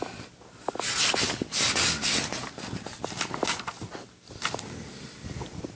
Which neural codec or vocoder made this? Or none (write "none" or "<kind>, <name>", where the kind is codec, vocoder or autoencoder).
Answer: none